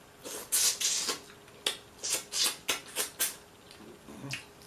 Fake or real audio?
real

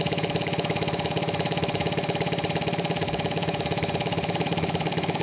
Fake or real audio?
fake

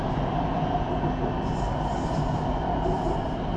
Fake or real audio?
real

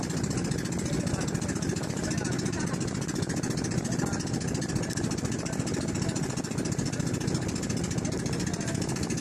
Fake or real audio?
real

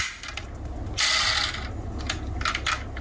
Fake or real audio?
real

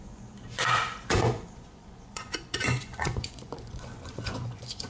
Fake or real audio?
fake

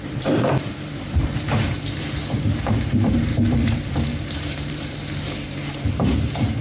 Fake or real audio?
fake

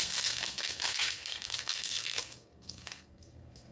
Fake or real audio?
fake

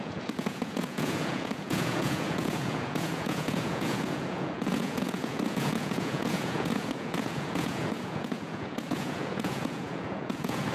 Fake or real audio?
fake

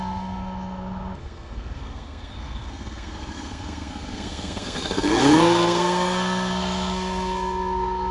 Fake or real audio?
fake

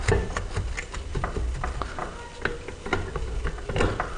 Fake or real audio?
real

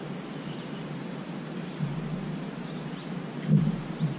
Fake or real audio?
real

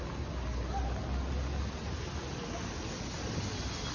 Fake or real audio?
real